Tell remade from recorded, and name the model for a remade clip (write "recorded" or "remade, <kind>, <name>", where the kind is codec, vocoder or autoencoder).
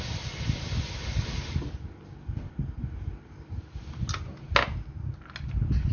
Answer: recorded